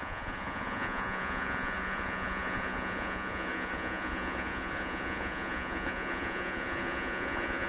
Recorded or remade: remade